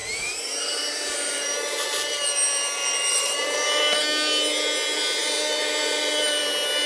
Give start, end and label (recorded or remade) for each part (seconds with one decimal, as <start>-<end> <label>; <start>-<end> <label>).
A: 0.0-4.0 remade; 4.0-5.2 recorded; 5.2-6.4 remade; 6.4-6.9 recorded